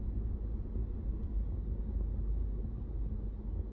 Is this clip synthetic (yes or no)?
no